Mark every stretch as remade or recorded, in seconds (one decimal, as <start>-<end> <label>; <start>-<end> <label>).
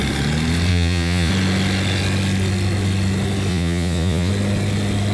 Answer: 0.0-0.7 recorded; 0.7-1.3 remade; 1.3-3.5 recorded; 3.5-4.3 remade; 4.3-5.1 recorded